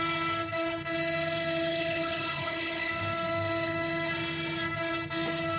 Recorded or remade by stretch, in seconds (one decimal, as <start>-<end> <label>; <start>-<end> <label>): 0.0-1.7 recorded; 1.7-2.9 remade; 2.9-5.6 recorded